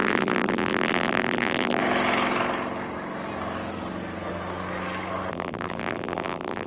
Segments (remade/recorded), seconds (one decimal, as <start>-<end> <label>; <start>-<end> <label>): 0.0-1.8 remade; 1.8-5.3 recorded; 5.3-6.7 remade